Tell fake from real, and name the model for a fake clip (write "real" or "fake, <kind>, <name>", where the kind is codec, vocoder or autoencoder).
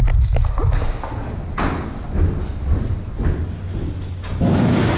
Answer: real